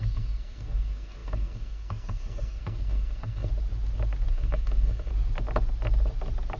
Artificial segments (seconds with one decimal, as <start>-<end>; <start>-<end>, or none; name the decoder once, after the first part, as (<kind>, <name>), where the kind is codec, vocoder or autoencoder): 0.0-3.5 (codec, SNAC); 4.3-5.1